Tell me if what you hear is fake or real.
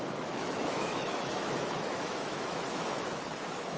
fake